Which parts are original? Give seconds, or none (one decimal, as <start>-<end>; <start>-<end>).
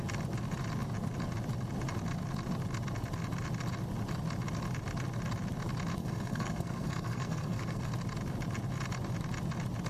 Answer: 0.0-6.0; 7.9-9.9